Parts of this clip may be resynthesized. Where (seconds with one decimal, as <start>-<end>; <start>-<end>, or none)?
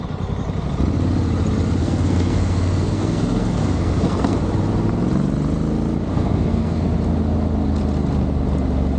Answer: 1.8-4.4; 6.1-6.9